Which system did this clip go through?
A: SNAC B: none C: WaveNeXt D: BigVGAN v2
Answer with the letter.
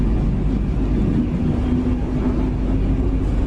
B